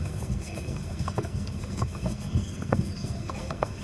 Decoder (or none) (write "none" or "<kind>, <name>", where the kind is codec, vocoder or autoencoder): codec, SNAC